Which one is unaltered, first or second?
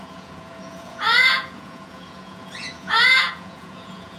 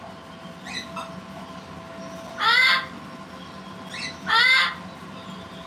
second